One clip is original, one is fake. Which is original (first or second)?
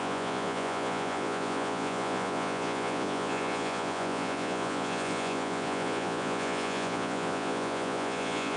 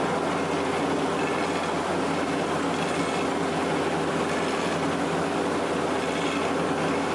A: second